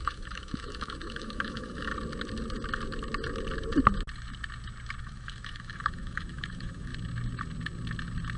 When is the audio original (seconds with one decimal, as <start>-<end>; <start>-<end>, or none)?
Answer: 1.9-5.0; 6.9-8.4